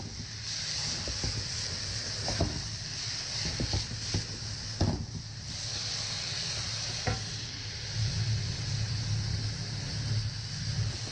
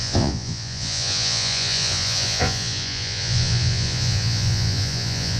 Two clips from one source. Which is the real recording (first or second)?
first